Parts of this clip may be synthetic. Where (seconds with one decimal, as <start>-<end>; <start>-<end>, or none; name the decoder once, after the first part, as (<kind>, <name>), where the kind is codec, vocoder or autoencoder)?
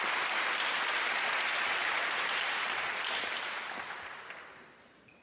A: none